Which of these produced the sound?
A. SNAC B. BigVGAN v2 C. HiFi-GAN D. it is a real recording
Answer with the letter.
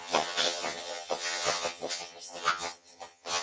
C